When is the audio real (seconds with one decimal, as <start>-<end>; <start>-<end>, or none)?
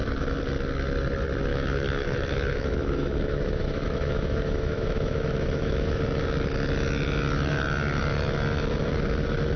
0.0-1.5; 6.0-9.6